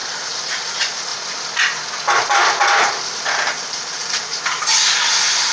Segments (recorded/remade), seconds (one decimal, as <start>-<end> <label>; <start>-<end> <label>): 0.0-1.1 recorded; 1.1-4.4 remade; 4.4-5.5 recorded